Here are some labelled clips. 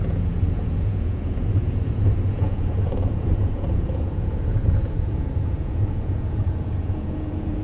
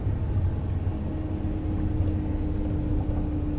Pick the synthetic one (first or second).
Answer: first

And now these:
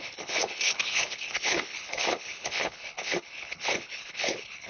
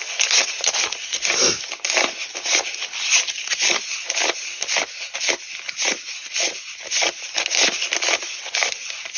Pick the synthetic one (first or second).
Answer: first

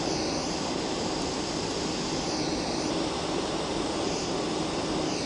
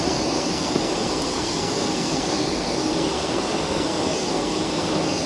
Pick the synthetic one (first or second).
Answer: second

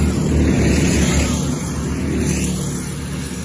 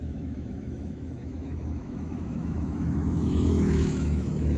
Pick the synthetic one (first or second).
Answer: second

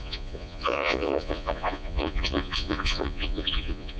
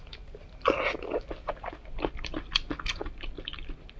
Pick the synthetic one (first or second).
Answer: first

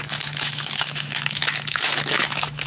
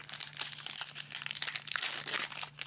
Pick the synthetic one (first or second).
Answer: first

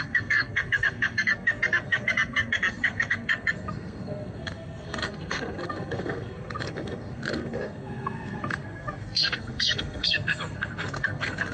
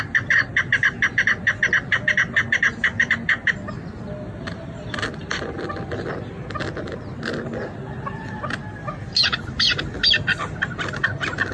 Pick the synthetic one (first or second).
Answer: first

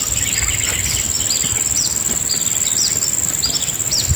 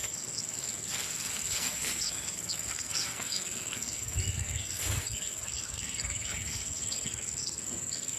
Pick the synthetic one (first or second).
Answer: second